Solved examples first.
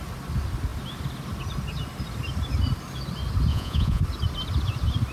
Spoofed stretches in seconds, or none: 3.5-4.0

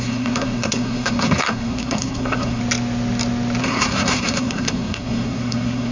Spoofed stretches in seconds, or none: 0.0-2.6; 3.6-5.9

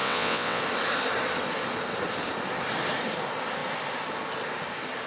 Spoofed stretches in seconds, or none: 0.0-0.6

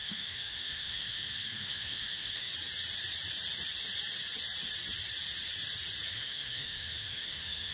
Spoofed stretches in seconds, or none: 0.0-2.5; 6.1-7.7